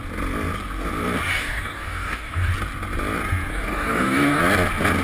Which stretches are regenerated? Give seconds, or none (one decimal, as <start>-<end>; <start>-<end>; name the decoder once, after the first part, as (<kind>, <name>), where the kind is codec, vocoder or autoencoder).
1.3-2.5 (codec, DAC); 3.5-4.4